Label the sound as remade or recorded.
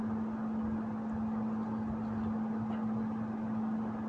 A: recorded